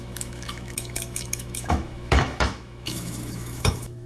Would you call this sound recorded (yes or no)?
no